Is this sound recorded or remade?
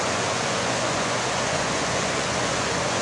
remade